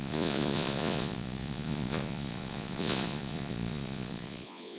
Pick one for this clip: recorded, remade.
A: remade